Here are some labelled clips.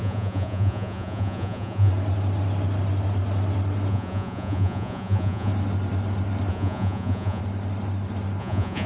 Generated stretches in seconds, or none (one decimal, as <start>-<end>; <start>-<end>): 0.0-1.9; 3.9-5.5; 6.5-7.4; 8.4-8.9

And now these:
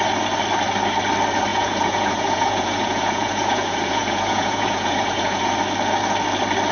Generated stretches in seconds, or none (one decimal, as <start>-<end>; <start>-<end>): 1.5-5.5

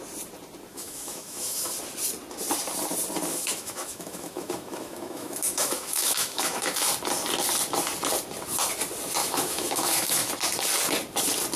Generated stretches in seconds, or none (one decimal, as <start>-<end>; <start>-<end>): 0.7-1.7; 3.3-6.9; 9.2-10.3

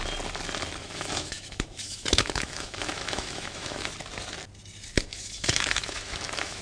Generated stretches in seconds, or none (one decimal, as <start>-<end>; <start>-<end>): 0.8-3.9; 5.1-6.6